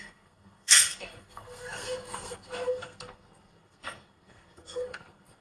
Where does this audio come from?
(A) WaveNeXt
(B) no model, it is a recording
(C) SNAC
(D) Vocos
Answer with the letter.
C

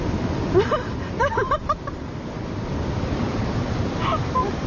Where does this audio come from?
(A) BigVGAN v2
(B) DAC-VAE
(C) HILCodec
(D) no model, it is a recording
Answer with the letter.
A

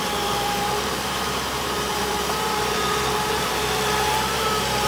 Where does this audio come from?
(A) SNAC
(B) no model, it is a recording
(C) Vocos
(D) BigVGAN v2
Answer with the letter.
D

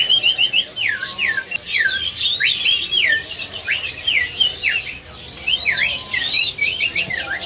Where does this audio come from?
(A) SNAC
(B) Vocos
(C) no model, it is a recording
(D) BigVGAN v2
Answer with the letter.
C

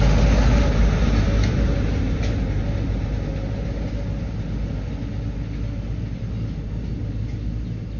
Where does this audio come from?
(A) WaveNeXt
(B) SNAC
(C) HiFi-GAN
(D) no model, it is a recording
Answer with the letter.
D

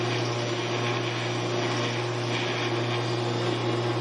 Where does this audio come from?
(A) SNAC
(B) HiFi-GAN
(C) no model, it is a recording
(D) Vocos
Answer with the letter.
C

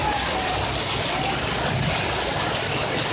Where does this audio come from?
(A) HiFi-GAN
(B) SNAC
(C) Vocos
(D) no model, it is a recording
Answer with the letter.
D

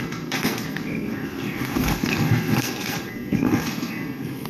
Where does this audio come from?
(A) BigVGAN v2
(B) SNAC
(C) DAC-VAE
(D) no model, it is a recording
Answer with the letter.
B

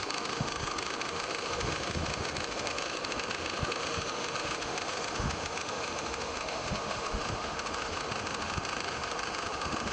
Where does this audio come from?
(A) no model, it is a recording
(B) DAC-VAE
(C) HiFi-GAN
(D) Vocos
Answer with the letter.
B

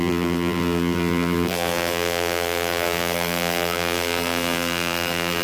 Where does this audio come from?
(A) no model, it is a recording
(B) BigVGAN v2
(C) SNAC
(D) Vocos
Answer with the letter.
B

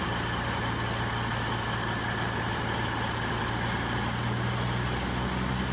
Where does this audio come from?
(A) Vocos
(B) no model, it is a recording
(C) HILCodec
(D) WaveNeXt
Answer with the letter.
B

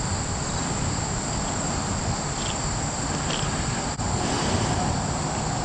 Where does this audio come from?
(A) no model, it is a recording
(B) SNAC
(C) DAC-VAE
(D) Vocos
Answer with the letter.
A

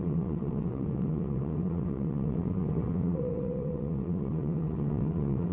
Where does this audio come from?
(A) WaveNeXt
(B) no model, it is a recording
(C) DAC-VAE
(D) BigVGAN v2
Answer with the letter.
A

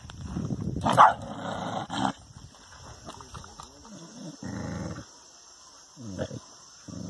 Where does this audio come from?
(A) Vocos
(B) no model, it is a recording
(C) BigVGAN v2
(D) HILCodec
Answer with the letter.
B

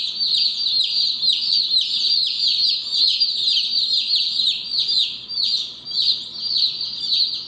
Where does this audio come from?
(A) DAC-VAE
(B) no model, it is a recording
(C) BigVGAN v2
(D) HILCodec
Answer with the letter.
B